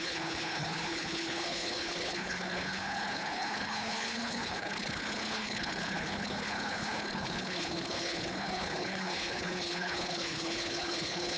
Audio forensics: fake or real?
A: fake